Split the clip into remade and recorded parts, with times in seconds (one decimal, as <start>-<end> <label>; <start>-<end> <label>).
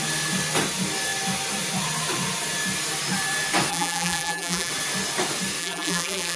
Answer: 0.0-3.7 recorded; 3.7-4.7 remade; 4.7-5.6 recorded; 5.6-6.4 remade